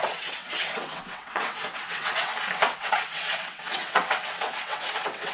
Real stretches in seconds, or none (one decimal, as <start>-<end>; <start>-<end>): 2.3-2.8

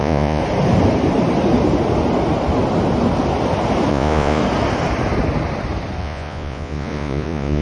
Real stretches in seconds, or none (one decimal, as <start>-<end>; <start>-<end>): 0.4-3.9; 4.4-6.0

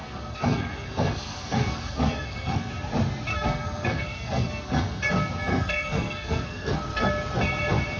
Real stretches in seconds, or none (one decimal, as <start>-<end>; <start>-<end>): 2.7-3.3; 5.1-5.5; 7.1-8.0